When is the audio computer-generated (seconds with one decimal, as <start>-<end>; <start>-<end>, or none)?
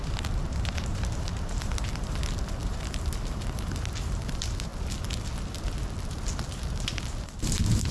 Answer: 0.0-4.7; 7.2-7.9